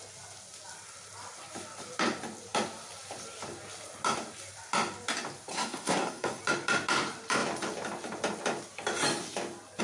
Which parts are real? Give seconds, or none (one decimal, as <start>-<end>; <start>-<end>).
0.0-5.5; 6.4-9.8

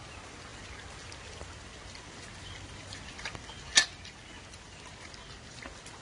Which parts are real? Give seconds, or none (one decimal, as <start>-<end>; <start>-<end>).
0.0-6.0

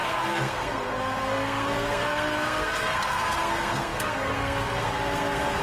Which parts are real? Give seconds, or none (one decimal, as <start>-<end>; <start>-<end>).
none